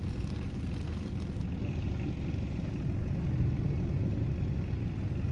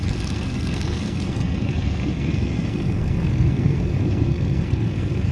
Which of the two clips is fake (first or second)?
second